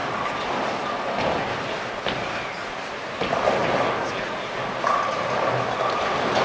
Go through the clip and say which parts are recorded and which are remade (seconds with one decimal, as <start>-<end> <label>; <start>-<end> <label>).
0.0-6.4 recorded